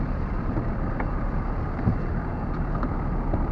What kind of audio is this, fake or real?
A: real